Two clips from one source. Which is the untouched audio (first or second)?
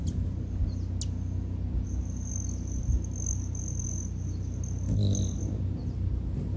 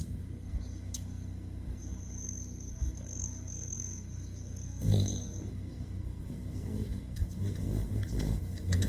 first